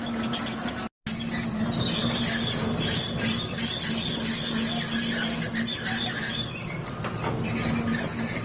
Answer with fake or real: real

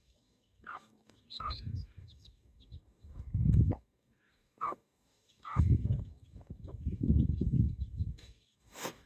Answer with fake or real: fake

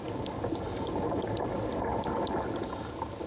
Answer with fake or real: real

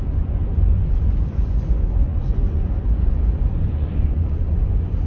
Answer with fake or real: fake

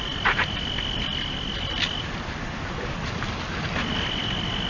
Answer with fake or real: fake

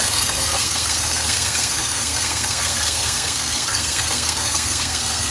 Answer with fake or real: fake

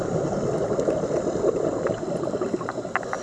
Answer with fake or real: real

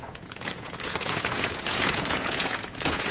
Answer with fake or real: fake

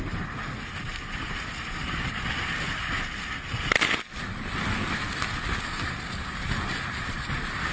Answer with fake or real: real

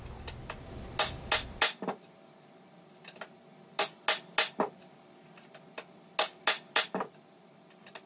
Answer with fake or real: real